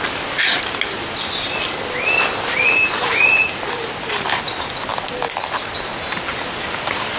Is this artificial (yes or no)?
no